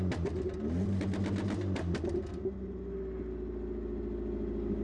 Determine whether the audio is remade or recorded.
recorded